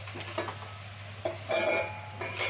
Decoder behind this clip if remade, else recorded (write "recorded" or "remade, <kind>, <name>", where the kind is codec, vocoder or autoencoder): recorded